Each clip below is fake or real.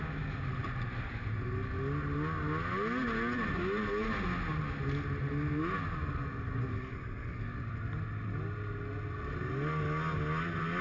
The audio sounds real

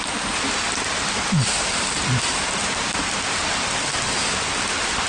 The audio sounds real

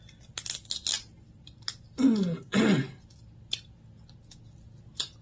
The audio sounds real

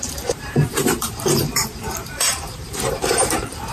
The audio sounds fake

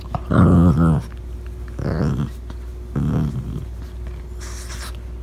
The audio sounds real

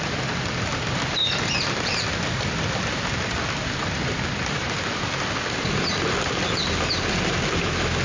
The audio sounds fake